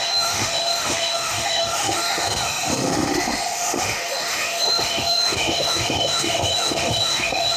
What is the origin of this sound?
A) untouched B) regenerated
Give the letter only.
B